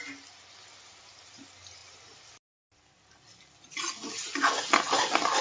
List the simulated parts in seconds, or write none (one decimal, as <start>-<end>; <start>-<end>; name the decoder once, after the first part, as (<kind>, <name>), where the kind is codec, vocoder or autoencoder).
none